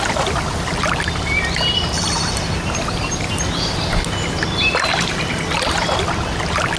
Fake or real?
real